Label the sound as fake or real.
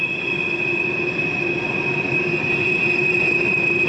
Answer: real